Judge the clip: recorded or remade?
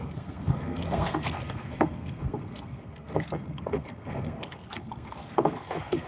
remade